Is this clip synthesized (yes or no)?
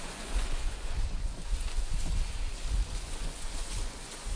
yes